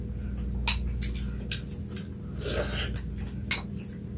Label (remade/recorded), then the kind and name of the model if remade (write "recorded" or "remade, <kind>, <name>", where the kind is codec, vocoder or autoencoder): recorded